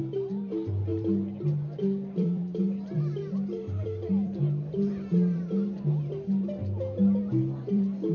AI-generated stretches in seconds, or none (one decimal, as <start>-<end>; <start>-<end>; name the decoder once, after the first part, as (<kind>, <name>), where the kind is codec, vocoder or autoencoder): 0.0-6.6 (vocoder, BigVGAN v2); 7.2-8.1